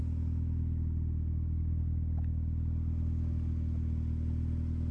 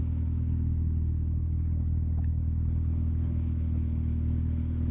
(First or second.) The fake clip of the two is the second